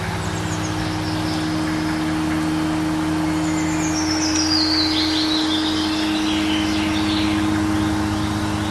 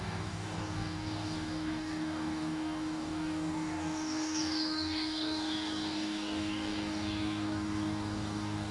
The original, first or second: first